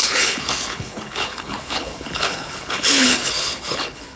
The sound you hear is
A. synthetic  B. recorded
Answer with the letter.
A